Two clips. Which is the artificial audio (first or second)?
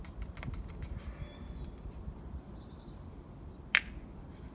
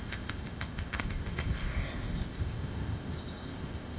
second